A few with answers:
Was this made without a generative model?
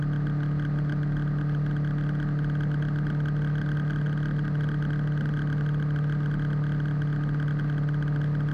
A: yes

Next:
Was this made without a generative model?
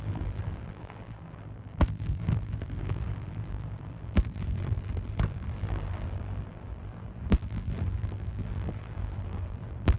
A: no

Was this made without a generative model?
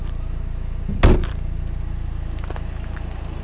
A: yes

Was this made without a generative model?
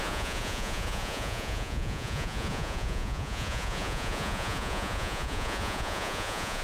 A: no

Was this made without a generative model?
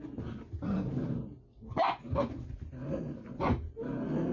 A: yes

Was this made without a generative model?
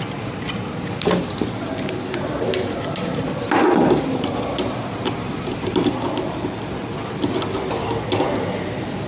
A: yes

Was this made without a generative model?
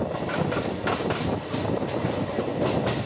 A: yes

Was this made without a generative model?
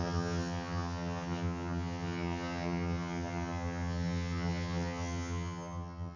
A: no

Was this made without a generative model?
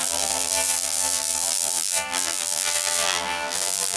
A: no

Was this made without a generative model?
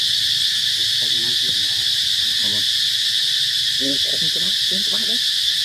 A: yes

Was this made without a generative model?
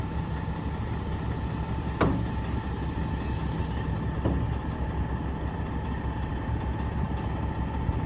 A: yes